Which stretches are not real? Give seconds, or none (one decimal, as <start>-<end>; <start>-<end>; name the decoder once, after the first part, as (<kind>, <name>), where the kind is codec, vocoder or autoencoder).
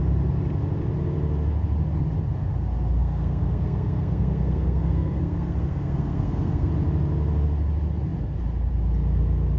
3.0-6.7 (codec, SNAC)